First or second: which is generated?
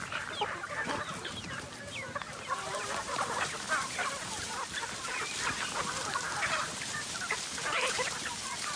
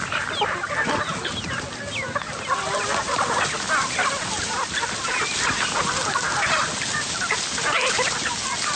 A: first